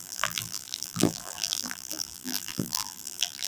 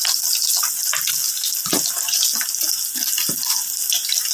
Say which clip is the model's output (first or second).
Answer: first